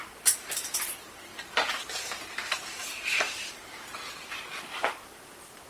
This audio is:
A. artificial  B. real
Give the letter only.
A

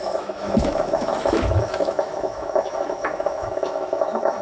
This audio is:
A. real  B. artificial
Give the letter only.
B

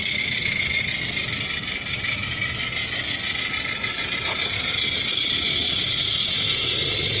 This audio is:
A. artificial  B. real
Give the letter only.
B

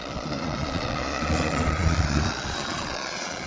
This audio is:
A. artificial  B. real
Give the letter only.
A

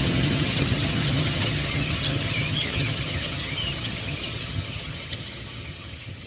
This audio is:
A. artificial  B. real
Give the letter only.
A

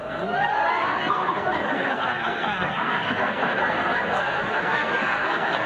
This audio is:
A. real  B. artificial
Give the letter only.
B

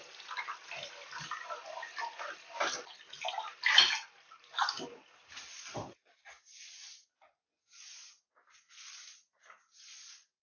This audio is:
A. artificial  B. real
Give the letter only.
B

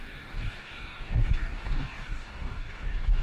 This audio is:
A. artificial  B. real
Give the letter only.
A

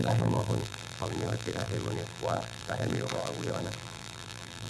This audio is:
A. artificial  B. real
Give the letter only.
A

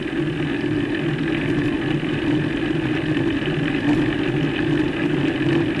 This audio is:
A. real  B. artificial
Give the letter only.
A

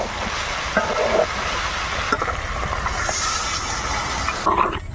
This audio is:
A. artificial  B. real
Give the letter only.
B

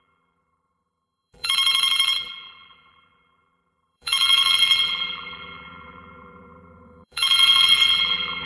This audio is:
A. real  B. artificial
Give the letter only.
B